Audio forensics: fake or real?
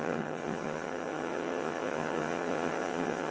fake